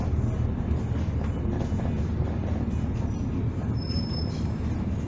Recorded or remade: recorded